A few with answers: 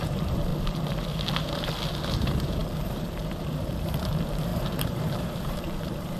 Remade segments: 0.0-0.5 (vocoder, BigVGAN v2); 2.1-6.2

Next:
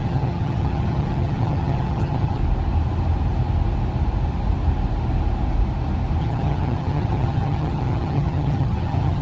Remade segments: 0.0-2.4 (vocoder, HiFi-GAN); 6.2-9.2

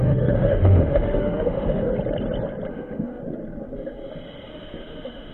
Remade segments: 0.0-1.9 (autoencoder, DAC-VAE); 2.7-3.2; 4.5-5.3

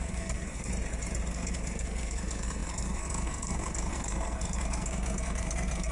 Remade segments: 0.0-0.7 (codec, SNAC); 1.3-5.9

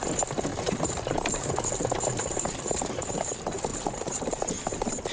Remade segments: 0.5-3.1 (vocoder, BigVGAN v2); 3.7-4.4

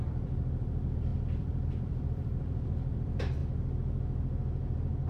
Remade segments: 0.0-3.4 (vocoder, BigVGAN v2)